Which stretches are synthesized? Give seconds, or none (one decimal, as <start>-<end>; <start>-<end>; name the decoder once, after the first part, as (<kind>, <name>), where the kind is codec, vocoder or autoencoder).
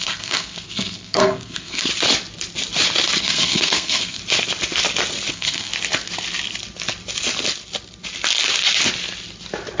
0.0-1.9 (codec, SNAC); 3.2-4.2; 5.3-5.7